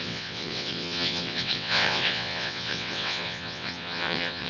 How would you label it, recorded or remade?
remade